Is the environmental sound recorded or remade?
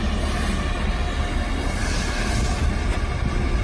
recorded